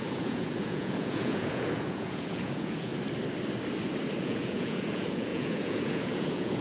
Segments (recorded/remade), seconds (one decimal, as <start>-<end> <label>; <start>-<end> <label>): 0.0-2.9 remade; 2.9-4.1 recorded; 4.1-6.6 remade